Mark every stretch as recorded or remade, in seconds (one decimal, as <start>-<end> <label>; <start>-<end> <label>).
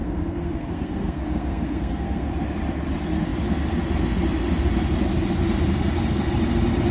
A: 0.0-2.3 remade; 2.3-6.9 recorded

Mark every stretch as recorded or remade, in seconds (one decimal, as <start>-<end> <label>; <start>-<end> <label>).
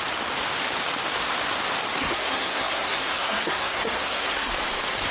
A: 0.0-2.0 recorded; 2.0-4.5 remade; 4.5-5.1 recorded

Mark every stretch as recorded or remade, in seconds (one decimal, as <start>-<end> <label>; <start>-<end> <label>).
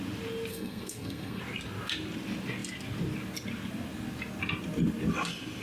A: 0.0-0.5 recorded; 0.5-1.4 remade; 1.4-5.6 recorded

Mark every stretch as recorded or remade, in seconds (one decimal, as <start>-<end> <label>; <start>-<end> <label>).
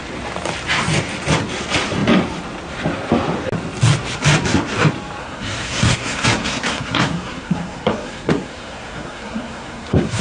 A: 0.0-5.2 recorded; 5.2-10.2 remade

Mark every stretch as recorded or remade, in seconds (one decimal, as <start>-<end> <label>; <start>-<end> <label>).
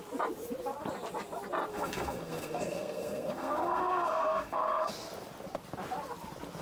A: 0.0-1.7 recorded; 1.7-4.9 remade; 4.9-6.6 recorded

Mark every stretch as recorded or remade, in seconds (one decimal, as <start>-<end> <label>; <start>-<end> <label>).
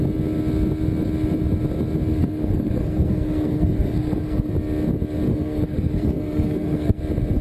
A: 0.0-2.2 recorded; 2.2-4.5 remade; 4.5-5.3 recorded; 5.3-7.0 remade; 7.0-7.4 recorded